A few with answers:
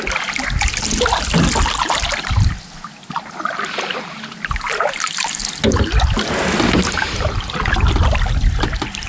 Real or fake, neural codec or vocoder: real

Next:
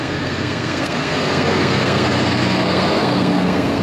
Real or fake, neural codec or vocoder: fake, codec, SNAC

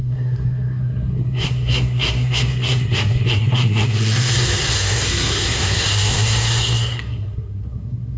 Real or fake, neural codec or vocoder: fake, codec, SNAC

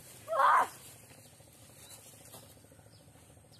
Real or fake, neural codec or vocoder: real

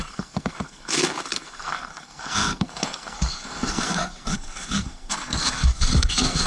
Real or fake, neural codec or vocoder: fake, codec, SNAC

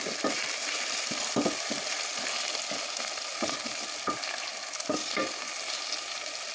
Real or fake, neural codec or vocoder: real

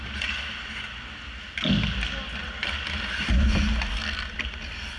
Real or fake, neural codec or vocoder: real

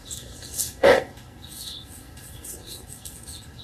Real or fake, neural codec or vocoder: fake, codec, SNAC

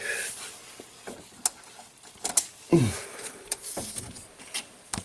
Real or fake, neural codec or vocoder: real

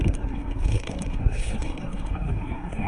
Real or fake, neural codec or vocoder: fake, codec, SNAC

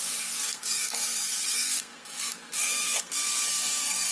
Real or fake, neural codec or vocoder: fake, codec, SNAC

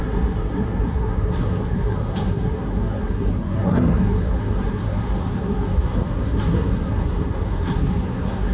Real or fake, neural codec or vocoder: fake, codec, SNAC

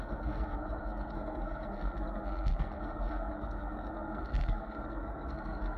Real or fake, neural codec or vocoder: fake, codec, SNAC